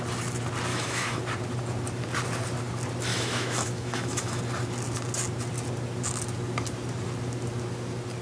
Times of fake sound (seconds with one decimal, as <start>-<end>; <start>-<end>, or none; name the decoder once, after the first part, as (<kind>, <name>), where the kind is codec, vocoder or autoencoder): 0.7-1.2 (autoencoder, DAC-VAE); 3.1-4.4